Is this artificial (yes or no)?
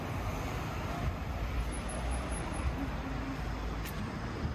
no